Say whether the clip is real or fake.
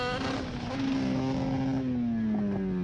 real